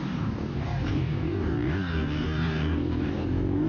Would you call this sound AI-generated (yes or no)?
yes